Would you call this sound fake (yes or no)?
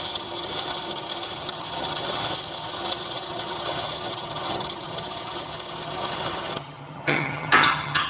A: yes